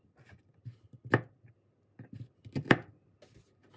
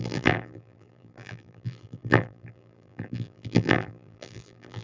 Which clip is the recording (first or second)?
first